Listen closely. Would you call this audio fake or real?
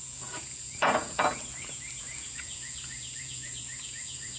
fake